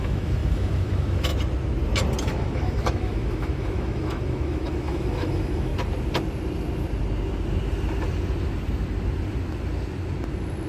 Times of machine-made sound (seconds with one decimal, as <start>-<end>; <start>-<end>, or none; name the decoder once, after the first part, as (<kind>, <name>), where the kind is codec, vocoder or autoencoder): 0.0-1.3 (autoencoder, DAC-VAE); 2.2-5.7